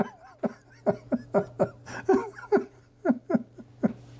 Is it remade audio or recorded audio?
recorded